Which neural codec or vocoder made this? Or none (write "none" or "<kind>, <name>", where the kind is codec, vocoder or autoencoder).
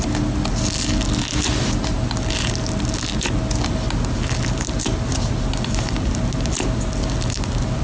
none